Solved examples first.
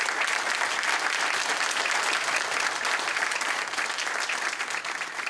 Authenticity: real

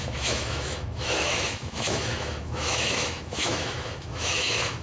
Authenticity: fake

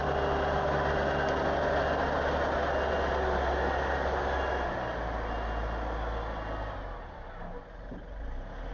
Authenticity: real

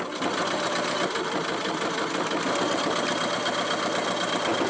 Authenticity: real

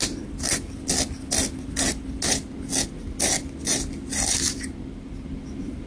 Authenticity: real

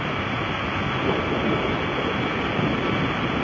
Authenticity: real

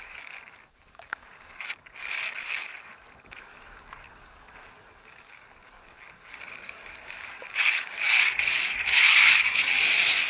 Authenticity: fake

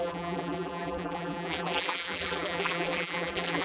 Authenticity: fake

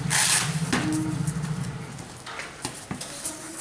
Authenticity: real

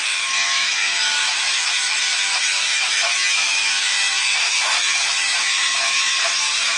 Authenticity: fake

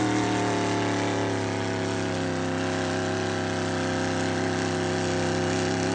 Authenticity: real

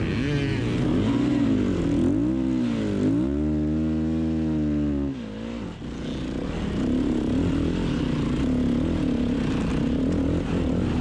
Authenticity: real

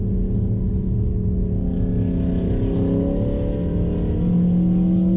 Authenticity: real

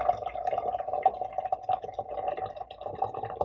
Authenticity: real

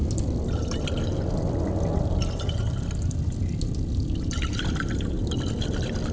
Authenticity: real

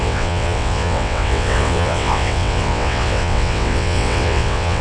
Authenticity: fake